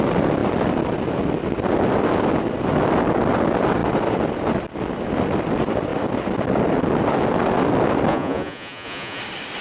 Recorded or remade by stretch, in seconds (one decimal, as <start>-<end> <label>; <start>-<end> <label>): 0.0-8.1 recorded; 8.1-9.2 remade; 9.2-9.6 recorded